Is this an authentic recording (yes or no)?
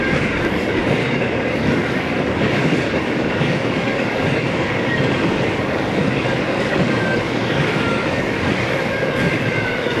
no